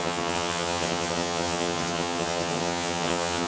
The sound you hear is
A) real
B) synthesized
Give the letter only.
B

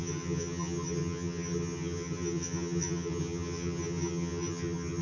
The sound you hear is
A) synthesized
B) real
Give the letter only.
A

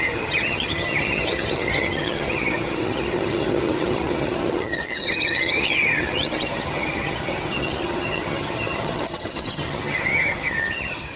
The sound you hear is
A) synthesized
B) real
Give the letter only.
A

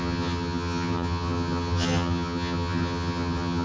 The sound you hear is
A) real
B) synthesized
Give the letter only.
B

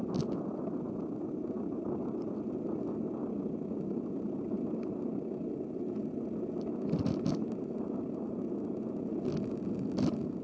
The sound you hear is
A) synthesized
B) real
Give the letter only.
B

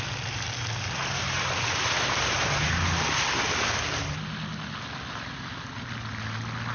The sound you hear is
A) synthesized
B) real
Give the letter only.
B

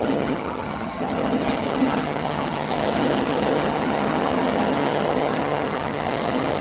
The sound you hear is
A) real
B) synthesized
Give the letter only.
B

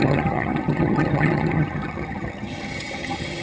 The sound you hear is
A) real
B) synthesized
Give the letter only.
B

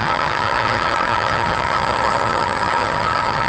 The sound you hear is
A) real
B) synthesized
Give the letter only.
B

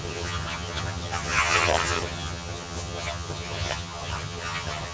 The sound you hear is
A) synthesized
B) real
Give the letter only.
A